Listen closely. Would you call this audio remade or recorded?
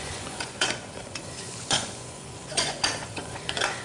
remade